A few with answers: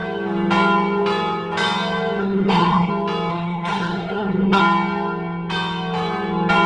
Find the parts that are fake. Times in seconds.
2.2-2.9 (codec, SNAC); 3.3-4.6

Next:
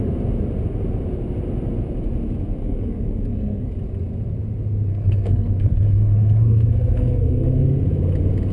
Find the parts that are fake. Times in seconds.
2.6-3.7 (codec, SNAC); 4.9-7.6

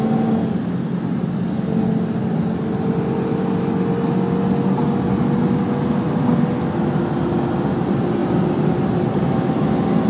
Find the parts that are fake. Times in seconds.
none

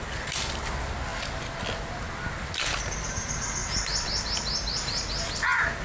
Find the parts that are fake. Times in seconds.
none

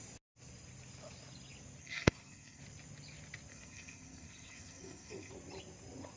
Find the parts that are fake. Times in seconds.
1.8-2.6 (codec, SNAC); 3.5-5.3

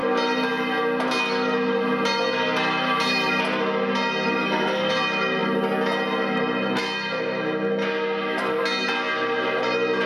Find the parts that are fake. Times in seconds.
4.4-4.9 (codec, SNAC)